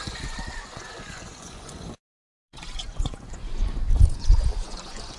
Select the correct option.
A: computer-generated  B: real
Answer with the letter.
A